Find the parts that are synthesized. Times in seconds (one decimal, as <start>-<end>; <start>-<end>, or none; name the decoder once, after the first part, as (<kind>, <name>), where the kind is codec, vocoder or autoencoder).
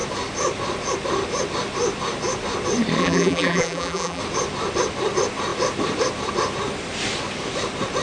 3.0-4.2 (vocoder, BigVGAN v2)